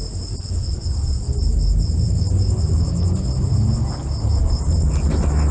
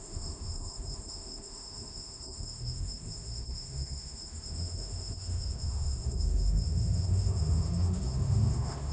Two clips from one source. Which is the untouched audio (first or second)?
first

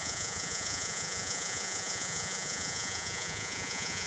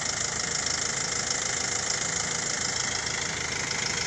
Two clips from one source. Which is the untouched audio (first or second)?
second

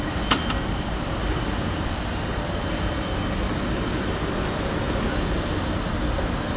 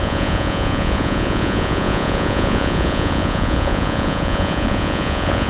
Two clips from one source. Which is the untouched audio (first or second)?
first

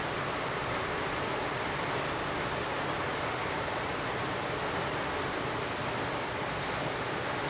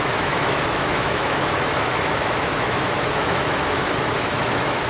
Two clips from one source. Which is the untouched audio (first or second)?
first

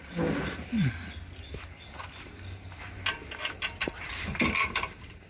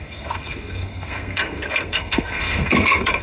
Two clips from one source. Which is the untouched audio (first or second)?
first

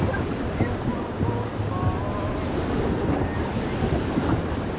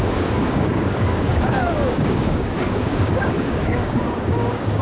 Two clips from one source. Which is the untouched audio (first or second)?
first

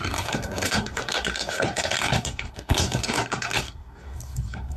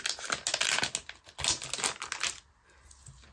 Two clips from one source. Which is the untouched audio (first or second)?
second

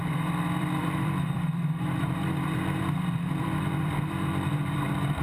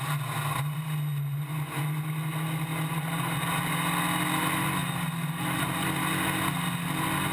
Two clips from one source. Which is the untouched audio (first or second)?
second